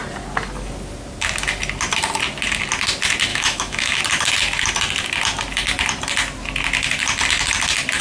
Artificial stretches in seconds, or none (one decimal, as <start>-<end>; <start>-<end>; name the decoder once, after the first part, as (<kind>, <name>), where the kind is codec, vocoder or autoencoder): 3.3-4.0 (autoencoder, DAC-VAE)